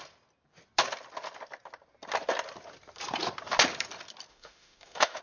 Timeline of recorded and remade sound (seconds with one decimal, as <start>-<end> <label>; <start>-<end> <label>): 0.0-4.3 recorded; 4.3-5.2 remade